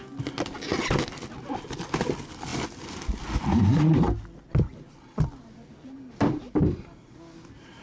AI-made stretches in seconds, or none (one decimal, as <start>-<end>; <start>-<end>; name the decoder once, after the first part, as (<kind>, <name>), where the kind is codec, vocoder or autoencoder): none